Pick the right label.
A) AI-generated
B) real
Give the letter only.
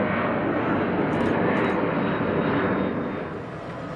B